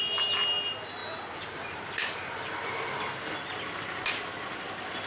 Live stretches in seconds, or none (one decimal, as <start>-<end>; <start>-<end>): 0.0-5.1